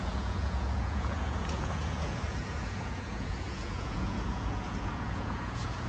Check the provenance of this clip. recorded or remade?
remade